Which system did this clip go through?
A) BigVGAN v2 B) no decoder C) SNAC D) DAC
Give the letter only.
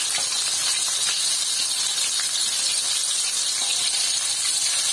B